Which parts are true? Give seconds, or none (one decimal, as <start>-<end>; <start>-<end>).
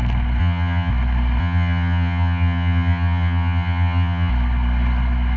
0.0-0.4; 0.9-1.4; 4.3-5.4